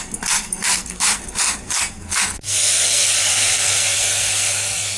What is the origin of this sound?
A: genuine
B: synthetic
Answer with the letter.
B